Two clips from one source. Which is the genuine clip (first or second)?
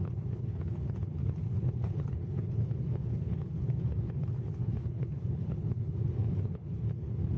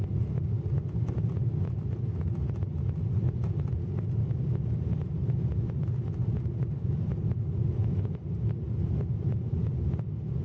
second